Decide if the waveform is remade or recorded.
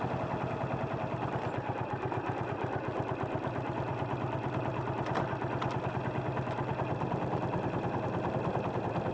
recorded